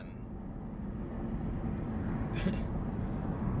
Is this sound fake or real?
real